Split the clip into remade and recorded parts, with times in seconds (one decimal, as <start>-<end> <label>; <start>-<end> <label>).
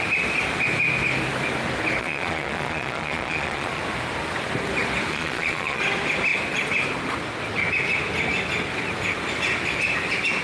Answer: 0.0-2.0 recorded; 2.0-3.8 remade; 3.8-5.1 recorded; 5.1-5.8 remade; 5.8-10.4 recorded